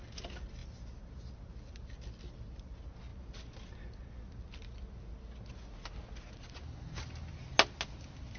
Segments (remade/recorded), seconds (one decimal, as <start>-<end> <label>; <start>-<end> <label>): 0.0-8.4 recorded